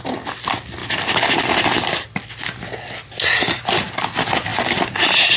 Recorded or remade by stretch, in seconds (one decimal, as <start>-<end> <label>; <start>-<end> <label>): 0.0-5.4 recorded